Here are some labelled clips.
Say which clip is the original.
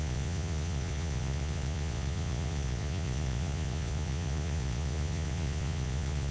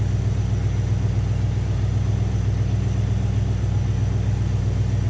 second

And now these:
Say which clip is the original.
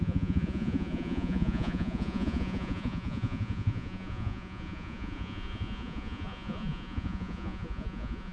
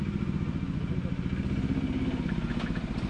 second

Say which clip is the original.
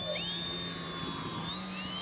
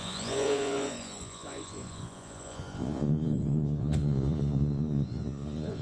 first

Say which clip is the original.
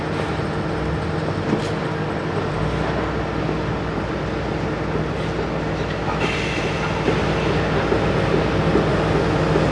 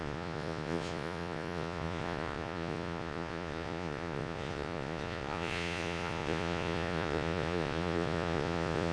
first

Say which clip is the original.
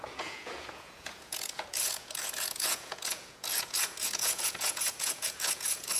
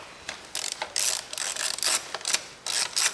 second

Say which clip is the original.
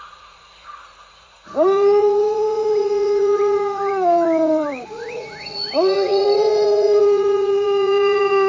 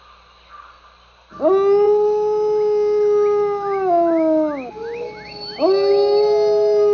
second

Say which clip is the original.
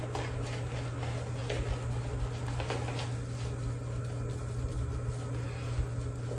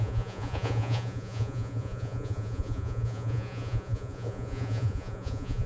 first